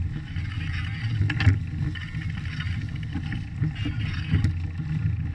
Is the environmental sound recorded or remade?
recorded